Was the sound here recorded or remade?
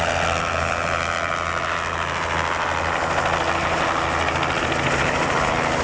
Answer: recorded